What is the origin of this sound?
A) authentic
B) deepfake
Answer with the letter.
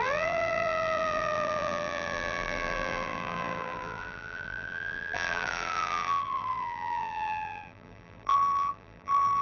B